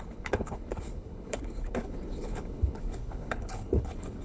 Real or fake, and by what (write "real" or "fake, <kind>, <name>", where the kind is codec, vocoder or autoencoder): fake, codec, HILCodec